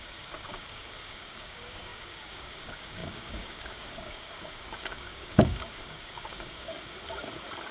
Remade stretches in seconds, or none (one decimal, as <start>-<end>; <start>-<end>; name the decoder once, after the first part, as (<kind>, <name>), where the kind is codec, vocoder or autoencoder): 0.0-6.7 (codec, DAC)